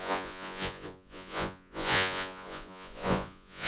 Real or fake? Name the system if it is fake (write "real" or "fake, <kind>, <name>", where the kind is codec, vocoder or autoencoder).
fake, vocoder, Vocos